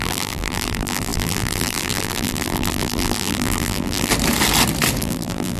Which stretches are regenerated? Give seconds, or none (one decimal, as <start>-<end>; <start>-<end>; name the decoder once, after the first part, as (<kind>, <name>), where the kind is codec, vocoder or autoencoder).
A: 0.0-4.1 (vocoder, BigVGAN v2); 5.0-5.6